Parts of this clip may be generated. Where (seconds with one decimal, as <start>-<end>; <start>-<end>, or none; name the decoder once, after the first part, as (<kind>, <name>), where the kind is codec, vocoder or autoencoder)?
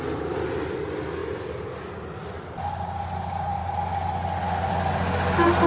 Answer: none